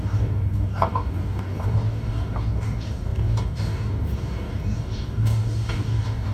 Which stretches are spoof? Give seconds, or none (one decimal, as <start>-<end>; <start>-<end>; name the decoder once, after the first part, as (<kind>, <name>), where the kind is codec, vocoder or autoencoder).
0.0-6.3 (codec, DAC)